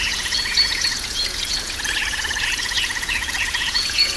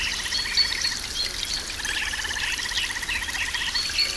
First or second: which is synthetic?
first